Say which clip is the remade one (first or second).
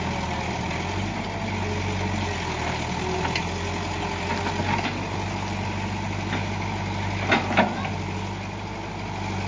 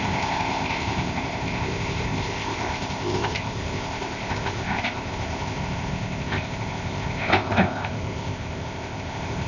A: second